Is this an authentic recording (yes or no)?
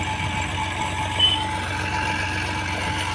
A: yes